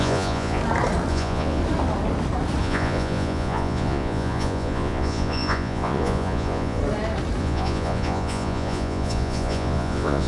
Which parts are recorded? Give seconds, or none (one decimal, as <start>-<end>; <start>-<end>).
0.6-1.1; 1.6-2.6; 6.8-7.4